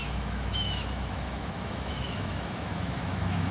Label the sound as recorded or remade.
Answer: remade